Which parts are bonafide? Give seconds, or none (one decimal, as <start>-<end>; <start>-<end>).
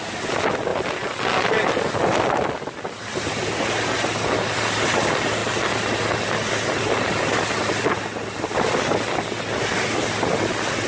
0.0-10.9